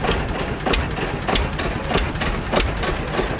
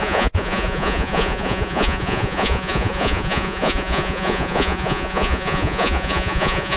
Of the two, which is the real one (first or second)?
first